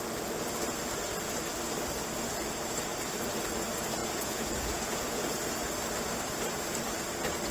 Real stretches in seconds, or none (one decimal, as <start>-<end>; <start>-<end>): 0.0-4.0; 5.3-7.5